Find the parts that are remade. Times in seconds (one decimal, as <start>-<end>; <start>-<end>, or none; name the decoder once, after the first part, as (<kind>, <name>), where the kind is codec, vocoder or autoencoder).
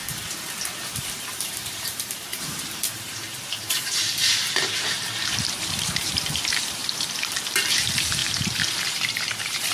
0.8-6.8 (vocoder, BigVGAN v2); 7.7-8.2; 8.7-9.7